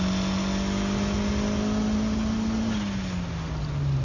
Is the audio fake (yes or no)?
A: no